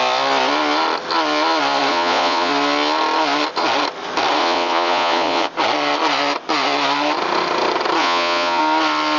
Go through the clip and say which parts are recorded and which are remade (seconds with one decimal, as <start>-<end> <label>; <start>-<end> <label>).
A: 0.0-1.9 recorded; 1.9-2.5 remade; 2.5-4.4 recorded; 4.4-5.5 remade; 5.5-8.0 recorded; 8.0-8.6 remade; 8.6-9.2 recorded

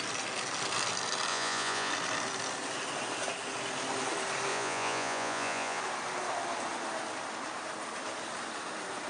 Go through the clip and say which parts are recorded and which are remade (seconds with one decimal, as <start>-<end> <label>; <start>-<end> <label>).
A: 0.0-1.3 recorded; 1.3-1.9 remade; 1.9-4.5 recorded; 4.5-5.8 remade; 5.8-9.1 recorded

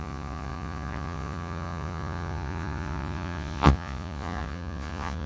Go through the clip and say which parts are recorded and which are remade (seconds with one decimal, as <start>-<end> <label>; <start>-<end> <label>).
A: 0.0-5.3 remade